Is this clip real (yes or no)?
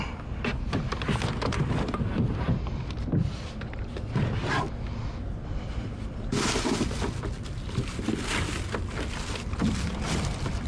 yes